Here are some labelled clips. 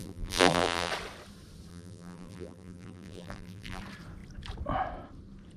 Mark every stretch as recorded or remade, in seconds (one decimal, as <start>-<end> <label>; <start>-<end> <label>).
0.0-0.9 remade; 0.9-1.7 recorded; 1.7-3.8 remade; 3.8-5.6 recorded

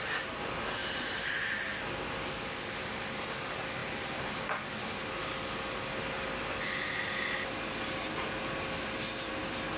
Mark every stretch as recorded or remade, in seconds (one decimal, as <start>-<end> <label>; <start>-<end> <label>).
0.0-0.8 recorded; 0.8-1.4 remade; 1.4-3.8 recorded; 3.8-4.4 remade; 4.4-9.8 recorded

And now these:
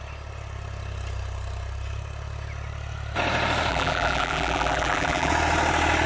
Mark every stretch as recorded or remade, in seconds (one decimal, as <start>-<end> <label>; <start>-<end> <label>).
0.0-3.7 recorded; 3.7-5.3 remade; 5.3-6.1 recorded